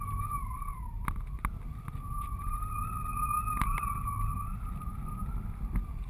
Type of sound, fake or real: real